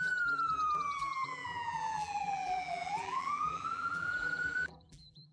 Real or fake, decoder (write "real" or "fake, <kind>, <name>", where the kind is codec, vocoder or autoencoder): fake, vocoder, BigVGAN v2